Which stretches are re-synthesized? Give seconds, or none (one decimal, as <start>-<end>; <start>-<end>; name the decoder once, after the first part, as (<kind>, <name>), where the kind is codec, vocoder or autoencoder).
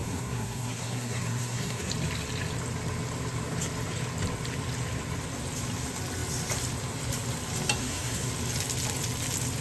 0.0-1.9 (codec, SNAC); 7.8-8.3